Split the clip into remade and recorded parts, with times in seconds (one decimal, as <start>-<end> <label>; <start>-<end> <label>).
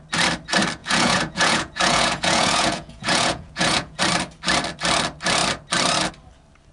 0.0-0.8 recorded; 0.8-4.0 remade; 4.0-6.7 recorded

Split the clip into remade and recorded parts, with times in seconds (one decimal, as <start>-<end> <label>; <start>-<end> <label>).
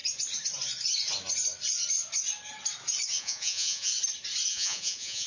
0.0-3.2 recorded; 3.2-3.9 remade; 3.9-4.5 recorded; 4.5-5.3 remade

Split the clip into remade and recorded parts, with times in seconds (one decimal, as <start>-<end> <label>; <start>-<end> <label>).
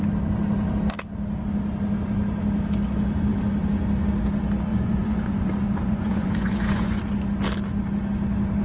0.0-4.7 recorded; 4.7-7.0 remade; 7.0-8.6 recorded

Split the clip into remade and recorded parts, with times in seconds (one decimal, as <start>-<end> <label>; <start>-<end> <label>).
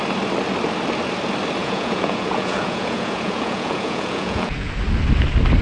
0.0-1.6 recorded; 1.6-4.7 remade; 4.7-5.6 recorded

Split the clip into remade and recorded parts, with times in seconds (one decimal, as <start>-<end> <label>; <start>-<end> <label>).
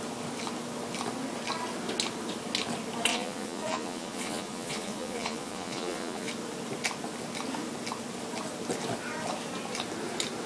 0.0-3.1 recorded; 3.1-6.3 remade; 6.3-10.5 recorded